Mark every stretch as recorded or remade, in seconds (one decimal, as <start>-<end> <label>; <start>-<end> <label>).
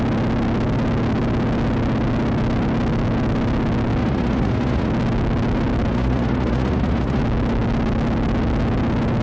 0.0-4.0 recorded; 4.0-4.9 remade; 4.9-5.9 recorded; 5.9-7.2 remade; 7.2-9.2 recorded